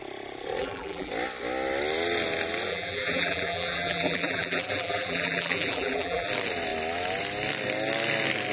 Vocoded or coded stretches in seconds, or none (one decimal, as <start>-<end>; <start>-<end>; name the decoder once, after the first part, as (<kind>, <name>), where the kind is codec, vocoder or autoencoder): 0.6-1.1 (vocoder, BigVGAN v2); 2.7-6.3

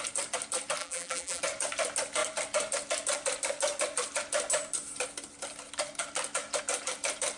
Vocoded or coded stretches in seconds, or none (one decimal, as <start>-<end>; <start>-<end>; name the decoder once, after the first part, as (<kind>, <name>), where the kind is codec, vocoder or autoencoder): 0.8-1.4 (vocoder, BigVGAN v2)

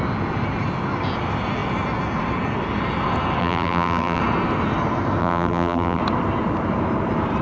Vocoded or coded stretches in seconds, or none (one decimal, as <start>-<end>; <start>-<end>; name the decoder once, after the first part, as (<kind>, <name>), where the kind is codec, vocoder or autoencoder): 3.4-4.2 (vocoder, BigVGAN v2); 5.2-6.0

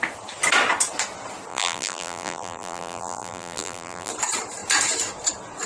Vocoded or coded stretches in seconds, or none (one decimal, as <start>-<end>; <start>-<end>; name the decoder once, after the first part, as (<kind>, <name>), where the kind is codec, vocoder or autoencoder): 1.5-4.1 (vocoder, BigVGAN v2)

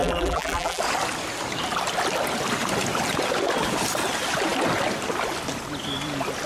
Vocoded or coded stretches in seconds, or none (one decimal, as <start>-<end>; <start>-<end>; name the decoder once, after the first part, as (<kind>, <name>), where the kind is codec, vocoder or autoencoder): 0.0-0.8 (vocoder, BigVGAN v2)

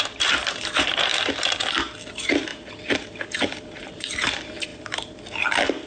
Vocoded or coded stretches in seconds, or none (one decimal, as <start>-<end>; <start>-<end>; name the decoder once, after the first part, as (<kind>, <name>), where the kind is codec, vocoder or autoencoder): 0.0-1.1 (vocoder, BigVGAN v2); 2.1-2.5; 3.8-5.9

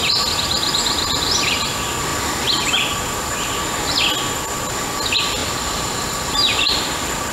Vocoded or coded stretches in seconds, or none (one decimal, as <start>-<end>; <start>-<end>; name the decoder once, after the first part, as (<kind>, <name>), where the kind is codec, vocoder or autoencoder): 5.4-7.3 (vocoder, BigVGAN v2)

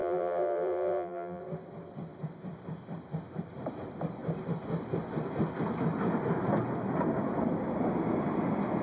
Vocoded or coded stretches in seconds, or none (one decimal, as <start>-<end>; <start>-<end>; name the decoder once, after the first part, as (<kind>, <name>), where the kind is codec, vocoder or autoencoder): 0.0-1.4 (vocoder, BigVGAN v2)